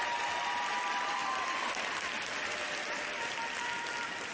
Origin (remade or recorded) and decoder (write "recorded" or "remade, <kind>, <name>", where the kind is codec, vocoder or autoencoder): recorded